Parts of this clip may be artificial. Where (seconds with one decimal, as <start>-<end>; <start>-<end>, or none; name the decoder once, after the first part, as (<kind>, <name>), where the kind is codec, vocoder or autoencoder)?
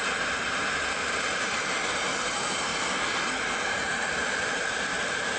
0.0-2.7 (vocoder, BigVGAN v2); 3.4-5.4